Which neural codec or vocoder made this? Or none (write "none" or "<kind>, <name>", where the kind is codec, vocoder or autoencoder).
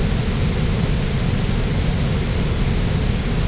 none